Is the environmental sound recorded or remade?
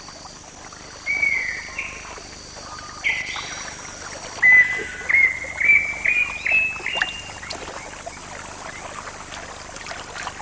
recorded